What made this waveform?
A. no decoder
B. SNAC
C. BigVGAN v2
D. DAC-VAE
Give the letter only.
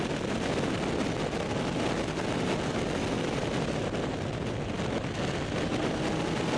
A